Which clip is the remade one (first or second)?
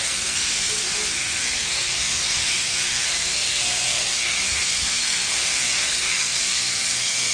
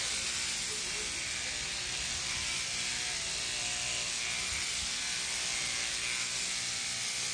first